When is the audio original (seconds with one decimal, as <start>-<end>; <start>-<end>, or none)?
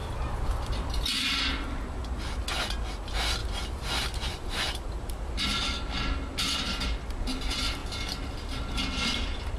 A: 1.0-3.4; 5.4-9.6